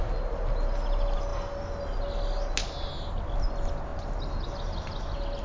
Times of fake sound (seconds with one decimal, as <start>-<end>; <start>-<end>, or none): none